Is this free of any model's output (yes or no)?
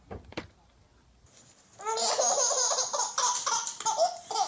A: yes